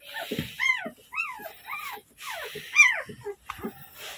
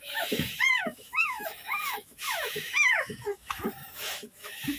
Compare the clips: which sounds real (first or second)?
first